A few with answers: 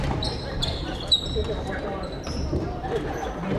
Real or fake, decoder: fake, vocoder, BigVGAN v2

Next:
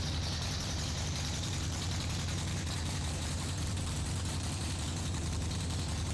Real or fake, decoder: fake, vocoder, BigVGAN v2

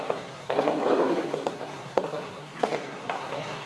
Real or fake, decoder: fake, codec, SNAC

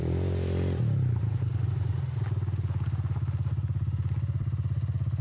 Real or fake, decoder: real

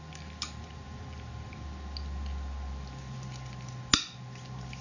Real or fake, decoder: real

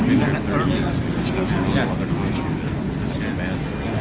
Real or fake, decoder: real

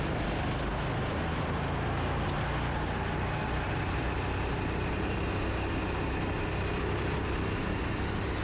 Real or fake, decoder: real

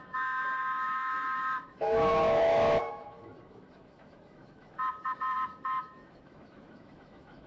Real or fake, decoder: fake, autoencoder, DAC-VAE